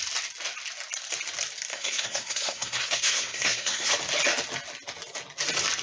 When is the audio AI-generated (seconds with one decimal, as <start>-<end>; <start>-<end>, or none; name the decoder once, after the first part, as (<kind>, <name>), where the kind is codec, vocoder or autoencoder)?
1.7-3.9 (codec, SNAC)